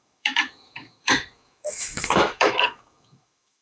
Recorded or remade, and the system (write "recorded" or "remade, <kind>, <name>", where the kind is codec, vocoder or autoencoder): remade, autoencoder, DAC-VAE